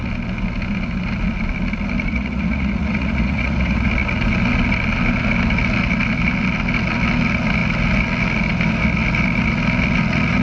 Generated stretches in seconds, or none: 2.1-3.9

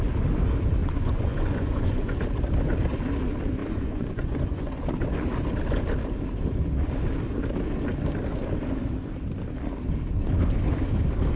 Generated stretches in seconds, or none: 0.8-2.2; 3.6-4.7